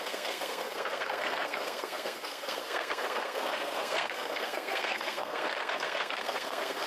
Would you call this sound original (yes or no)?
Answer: no